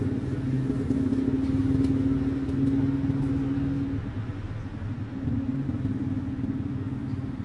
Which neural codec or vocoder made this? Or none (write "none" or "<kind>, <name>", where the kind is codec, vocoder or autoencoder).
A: none